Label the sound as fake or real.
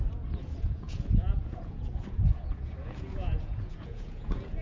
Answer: fake